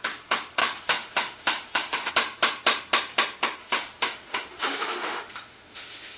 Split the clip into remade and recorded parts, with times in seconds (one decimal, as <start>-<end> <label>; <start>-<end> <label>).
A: 0.0-0.6 recorded; 0.6-2.1 remade; 2.1-3.6 recorded; 3.6-6.2 remade